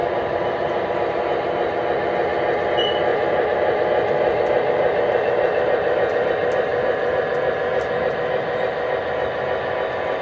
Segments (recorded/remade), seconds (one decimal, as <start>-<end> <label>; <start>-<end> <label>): 0.0-0.9 remade; 0.9-3.1 recorded; 3.1-6.3 remade; 6.3-10.2 recorded